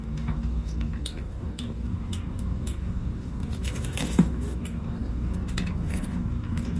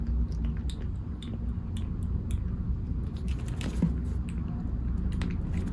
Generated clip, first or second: first